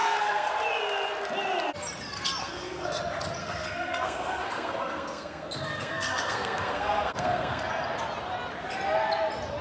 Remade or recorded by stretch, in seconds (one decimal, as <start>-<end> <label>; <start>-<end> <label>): 0.0-0.5 remade; 0.5-2.4 recorded; 2.4-3.0 remade; 3.0-3.4 recorded; 3.4-7.6 remade; 7.6-9.6 recorded